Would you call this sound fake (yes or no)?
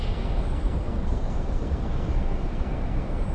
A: yes